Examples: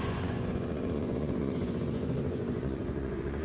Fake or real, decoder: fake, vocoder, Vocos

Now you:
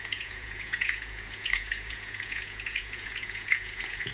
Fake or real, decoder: fake, vocoder, Vocos